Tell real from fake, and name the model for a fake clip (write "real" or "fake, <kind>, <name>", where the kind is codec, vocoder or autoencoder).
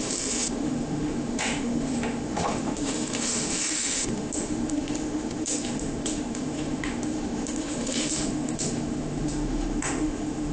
fake, autoencoder, DAC-VAE